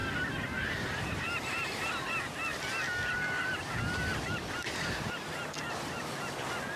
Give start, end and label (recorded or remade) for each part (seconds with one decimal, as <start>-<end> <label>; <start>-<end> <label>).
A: 0.0-1.9 remade; 1.9-2.5 recorded; 2.5-4.2 remade; 4.2-6.8 recorded